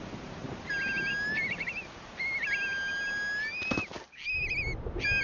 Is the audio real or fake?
real